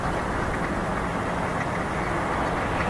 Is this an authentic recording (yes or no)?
yes